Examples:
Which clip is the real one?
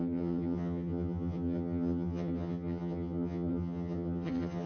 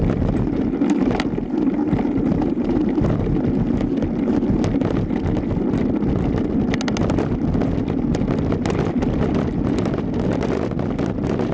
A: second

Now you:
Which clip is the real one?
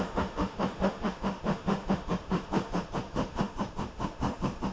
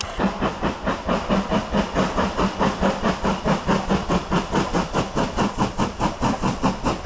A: second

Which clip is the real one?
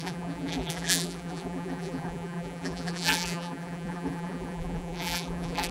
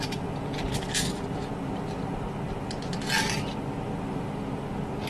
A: second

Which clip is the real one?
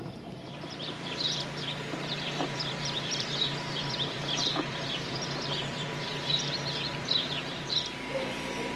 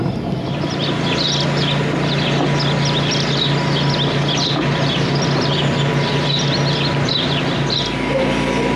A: second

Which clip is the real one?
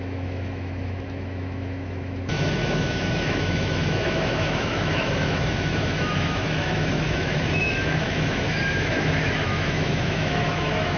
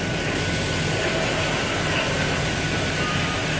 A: second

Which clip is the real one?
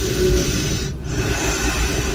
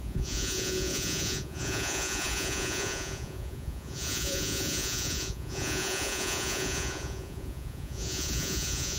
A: first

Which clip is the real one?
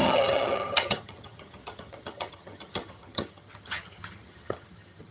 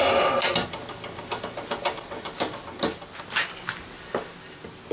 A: second